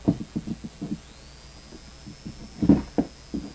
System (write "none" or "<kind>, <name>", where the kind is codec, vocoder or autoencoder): none